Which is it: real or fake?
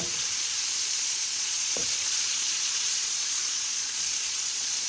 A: fake